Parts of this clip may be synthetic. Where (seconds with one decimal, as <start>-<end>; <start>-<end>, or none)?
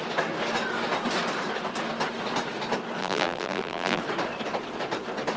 3.0-4.0